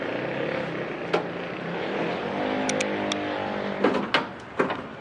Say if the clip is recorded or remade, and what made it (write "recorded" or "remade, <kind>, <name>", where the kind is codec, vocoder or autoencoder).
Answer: recorded